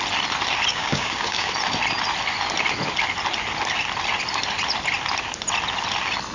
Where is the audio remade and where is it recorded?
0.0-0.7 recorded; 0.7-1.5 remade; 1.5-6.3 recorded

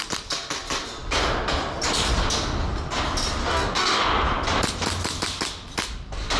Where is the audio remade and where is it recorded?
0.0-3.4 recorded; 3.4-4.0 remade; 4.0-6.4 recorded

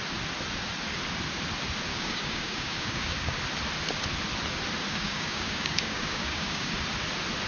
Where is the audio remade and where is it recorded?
0.0-1.9 recorded; 1.9-3.4 remade; 3.4-4.9 recorded; 4.9-6.7 remade; 6.7-7.5 recorded